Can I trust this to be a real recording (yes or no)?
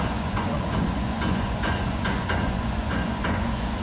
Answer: no